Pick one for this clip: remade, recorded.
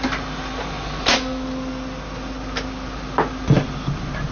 recorded